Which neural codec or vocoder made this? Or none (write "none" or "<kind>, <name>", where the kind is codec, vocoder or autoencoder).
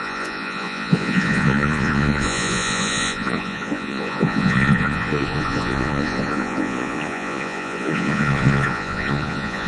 vocoder, Vocos